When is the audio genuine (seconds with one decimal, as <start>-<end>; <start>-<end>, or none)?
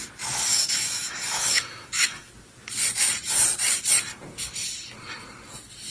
0.0-0.5; 2.3-5.9